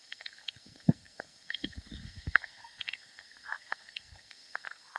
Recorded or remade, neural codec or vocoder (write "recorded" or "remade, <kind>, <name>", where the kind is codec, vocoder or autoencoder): remade, codec, SNAC